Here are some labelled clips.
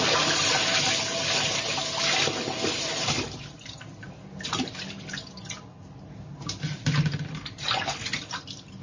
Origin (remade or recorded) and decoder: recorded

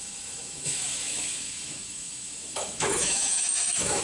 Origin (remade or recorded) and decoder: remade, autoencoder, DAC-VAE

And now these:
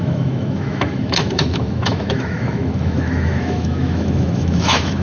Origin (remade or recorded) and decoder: remade, autoencoder, DAC-VAE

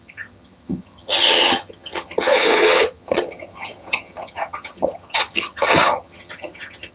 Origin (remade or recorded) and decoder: remade, vocoder, HiFi-GAN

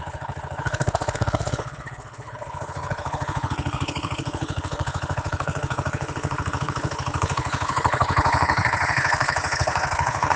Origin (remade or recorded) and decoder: remade, codec, HILCodec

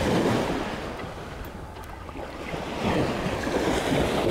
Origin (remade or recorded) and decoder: recorded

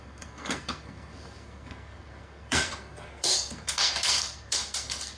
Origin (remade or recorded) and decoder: remade, codec, SNAC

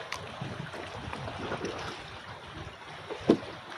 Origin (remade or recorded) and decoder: recorded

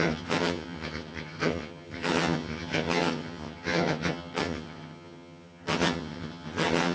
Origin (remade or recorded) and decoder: remade, vocoder, HiFi-GAN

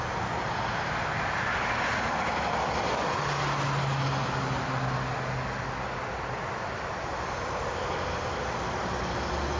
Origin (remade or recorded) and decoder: recorded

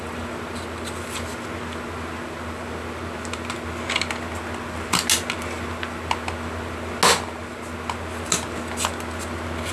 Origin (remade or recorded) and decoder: recorded